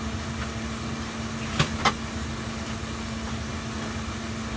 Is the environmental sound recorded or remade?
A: recorded